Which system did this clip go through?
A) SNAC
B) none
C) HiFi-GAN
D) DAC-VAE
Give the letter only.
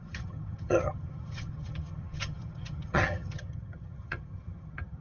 C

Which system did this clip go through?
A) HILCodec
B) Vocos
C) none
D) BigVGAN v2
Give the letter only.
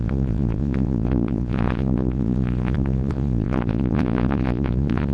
B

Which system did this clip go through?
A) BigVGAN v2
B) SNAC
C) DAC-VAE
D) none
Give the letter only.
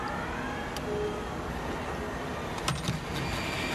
D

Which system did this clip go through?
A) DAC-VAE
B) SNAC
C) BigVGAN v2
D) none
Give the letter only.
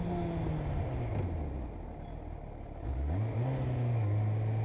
D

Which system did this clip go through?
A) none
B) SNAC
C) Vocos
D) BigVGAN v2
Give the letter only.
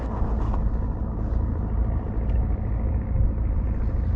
A